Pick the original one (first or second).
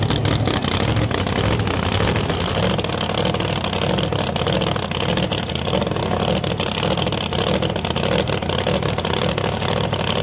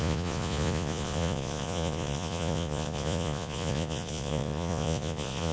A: first